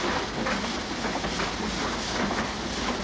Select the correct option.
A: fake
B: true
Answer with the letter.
B